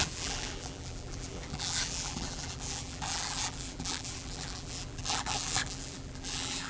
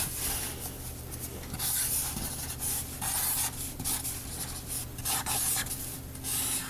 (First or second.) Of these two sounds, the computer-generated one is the first